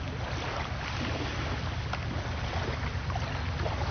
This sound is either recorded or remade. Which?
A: recorded